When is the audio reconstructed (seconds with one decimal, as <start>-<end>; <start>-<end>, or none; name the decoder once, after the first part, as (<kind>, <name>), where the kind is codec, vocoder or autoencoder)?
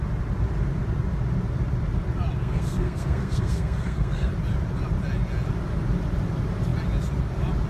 2.4-4.3 (codec, SNAC)